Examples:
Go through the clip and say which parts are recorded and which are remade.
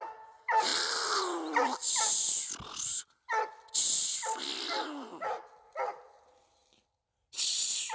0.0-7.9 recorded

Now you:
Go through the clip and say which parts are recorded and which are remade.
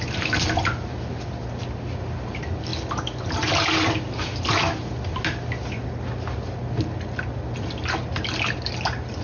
0.0-9.2 recorded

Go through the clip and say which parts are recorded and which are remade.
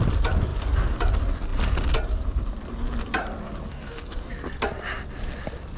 0.0-3.7 recorded; 3.7-4.3 remade; 4.3-5.8 recorded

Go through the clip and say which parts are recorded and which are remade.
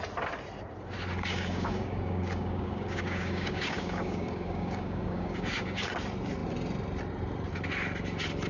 0.0-1.3 recorded; 1.3-5.9 remade; 5.9-8.5 recorded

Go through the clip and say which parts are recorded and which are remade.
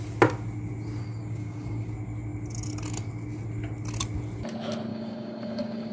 0.0-1.0 recorded; 1.0-1.9 remade; 1.9-4.9 recorded; 4.9-5.9 remade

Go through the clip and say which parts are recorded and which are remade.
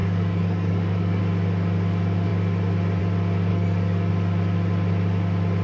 0.0-1.2 remade; 1.2-3.5 recorded; 3.5-4.1 remade; 4.1-5.6 recorded